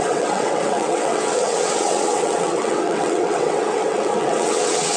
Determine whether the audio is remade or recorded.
remade